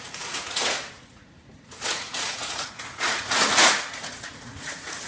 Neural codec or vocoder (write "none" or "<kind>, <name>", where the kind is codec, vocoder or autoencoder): vocoder, Vocos